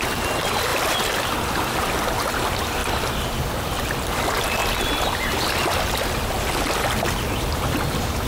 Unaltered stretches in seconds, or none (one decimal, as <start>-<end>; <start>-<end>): 0.0-0.7; 1.9-2.8; 3.5-8.3